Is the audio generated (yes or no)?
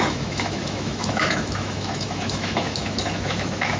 yes